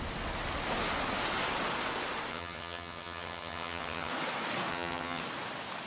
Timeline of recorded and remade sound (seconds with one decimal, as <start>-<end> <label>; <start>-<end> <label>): 0.0-2.3 recorded; 2.3-4.1 remade; 4.1-4.7 recorded; 4.7-5.2 remade; 5.2-5.9 recorded